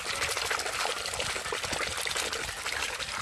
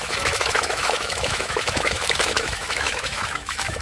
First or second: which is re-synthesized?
second